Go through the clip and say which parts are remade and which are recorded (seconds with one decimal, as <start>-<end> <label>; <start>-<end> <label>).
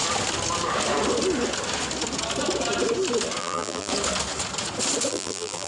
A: 0.0-3.4 recorded; 3.4-3.9 remade; 3.9-5.1 recorded; 5.1-5.7 remade